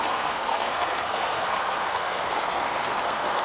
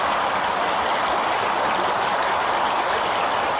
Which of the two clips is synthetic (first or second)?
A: first